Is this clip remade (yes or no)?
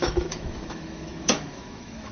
yes